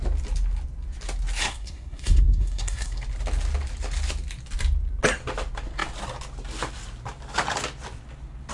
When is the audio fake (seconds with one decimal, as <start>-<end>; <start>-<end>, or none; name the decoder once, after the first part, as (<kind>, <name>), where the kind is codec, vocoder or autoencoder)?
1.4-3.0 (codec, SNAC)